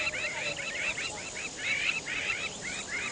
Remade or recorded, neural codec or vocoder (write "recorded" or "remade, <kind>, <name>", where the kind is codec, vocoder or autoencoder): recorded